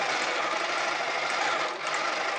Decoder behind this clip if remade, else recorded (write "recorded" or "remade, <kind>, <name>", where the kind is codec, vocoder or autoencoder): recorded